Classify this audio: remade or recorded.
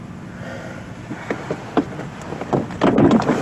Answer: recorded